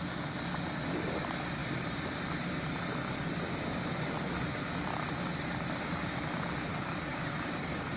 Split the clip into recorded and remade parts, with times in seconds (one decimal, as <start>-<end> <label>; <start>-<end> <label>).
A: 0.0-6.7 recorded; 6.7-8.0 remade